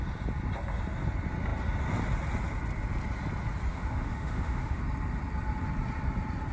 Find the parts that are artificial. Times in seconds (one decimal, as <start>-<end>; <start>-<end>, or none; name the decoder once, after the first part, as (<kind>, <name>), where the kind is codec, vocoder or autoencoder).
3.7-4.8 (autoencoder, DAC-VAE)